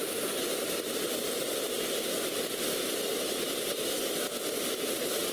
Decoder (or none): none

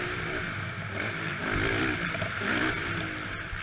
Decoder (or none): none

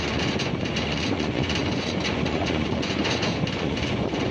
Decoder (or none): vocoder, Vocos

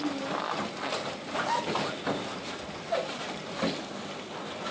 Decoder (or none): none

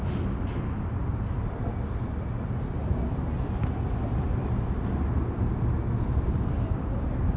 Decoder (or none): none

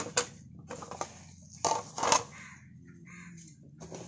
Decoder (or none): none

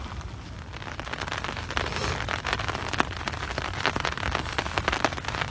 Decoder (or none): none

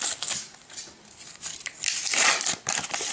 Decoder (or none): none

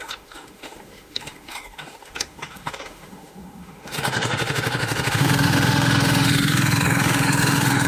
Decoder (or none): autoencoder, DAC-VAE